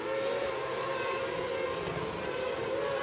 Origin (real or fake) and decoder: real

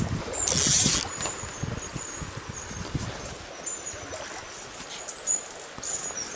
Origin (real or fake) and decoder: real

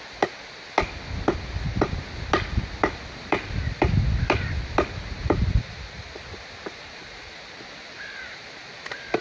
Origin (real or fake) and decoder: real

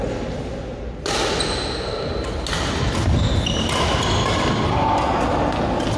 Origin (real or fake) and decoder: real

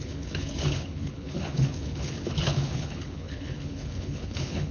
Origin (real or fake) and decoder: fake, codec, HILCodec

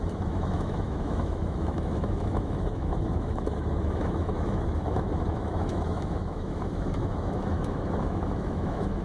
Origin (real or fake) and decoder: fake, autoencoder, DAC-VAE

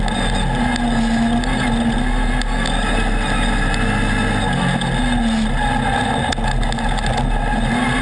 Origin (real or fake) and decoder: real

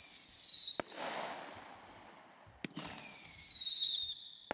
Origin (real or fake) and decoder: real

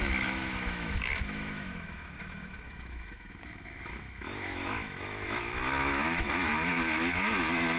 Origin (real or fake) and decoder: fake, autoencoder, DAC-VAE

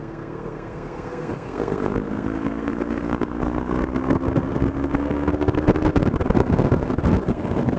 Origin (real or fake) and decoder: fake, codec, SNAC